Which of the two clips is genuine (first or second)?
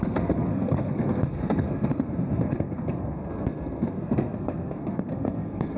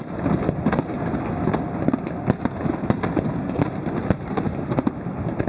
second